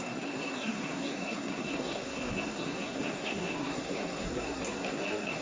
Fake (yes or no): yes